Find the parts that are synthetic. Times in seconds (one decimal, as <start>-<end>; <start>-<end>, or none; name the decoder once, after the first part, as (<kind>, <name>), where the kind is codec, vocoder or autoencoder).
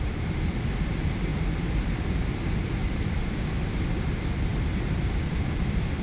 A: 0.0-6.0 (vocoder, BigVGAN v2)